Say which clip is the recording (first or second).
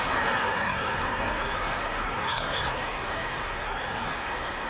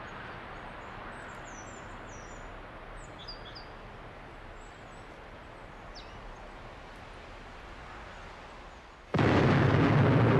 second